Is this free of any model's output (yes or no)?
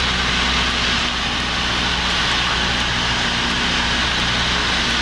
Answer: yes